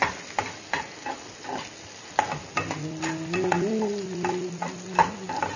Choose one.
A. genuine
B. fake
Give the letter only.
A